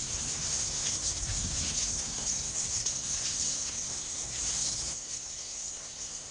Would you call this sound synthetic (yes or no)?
yes